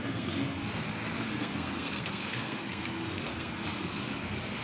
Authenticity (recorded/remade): remade